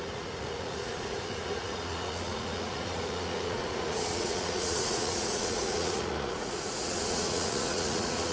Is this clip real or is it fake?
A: fake